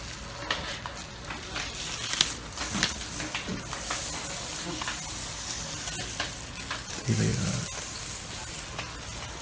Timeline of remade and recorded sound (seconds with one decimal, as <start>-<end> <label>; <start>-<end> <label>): 0.0-9.4 recorded